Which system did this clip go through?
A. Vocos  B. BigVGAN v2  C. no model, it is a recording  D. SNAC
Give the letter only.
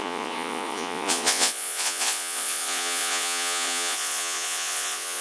A